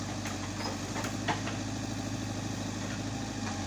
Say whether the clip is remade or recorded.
recorded